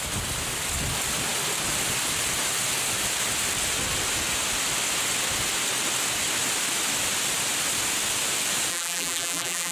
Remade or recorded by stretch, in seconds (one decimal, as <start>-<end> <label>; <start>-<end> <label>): 0.0-8.7 recorded; 8.7-9.7 remade